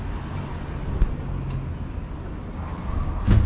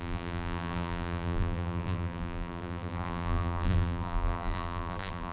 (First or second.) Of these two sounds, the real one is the first